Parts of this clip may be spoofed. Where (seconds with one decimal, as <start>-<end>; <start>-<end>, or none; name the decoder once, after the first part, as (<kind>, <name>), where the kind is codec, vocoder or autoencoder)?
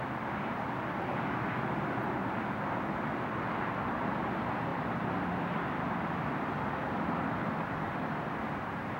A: none